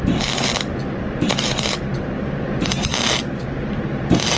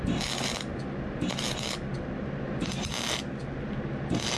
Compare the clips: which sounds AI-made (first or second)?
first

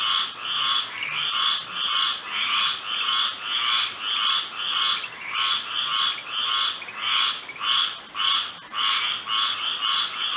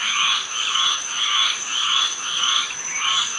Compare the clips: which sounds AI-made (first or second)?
second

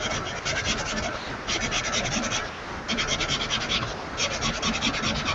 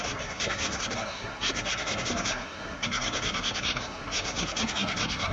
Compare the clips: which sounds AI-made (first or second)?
second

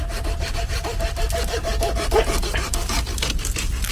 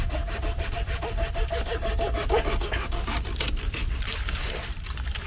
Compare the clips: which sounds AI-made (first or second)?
second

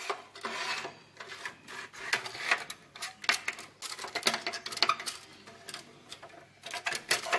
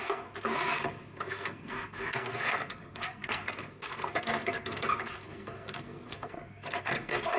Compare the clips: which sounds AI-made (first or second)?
second